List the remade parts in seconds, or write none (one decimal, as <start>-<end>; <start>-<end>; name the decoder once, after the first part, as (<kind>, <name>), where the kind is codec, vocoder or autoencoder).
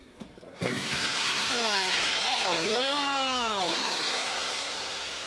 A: 0.0-5.3 (codec, SNAC)